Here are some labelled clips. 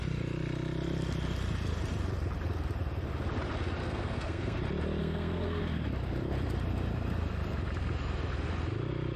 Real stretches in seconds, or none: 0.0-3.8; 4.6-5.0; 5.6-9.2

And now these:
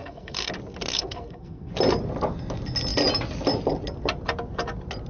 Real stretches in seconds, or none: 0.5-0.9; 1.7-5.1

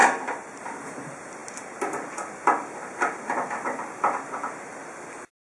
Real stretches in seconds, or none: 0.6-5.5